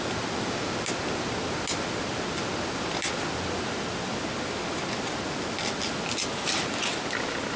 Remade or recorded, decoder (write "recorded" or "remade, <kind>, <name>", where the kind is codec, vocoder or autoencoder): recorded